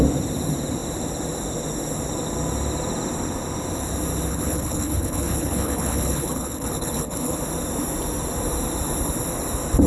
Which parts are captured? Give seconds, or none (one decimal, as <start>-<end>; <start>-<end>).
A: 0.0-4.3; 7.4-9.9